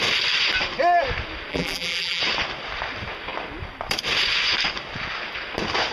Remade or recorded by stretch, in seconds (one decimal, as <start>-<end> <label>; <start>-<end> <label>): 0.0-1.5 recorded; 1.5-2.2 remade; 2.2-5.9 recorded